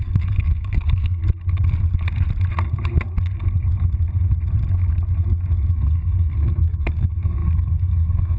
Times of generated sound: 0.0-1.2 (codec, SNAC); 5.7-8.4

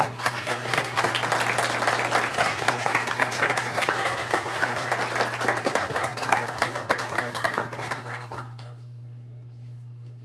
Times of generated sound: 0.0-1.1 (codec, SNAC); 2.3-4.9; 5.6-10.2

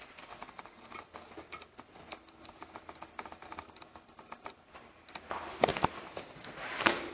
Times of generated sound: none

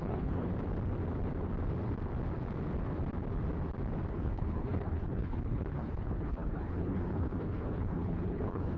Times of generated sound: 0.0-0.5 (codec, HILCodec); 4.1-8.8